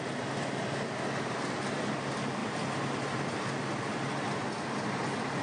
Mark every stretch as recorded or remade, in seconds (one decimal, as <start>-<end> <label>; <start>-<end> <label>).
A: 0.0-5.4 recorded